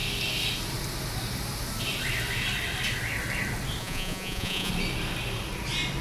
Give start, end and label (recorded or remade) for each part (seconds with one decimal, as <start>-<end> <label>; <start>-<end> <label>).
0.0-3.8 recorded; 3.8-4.7 remade; 4.7-6.0 recorded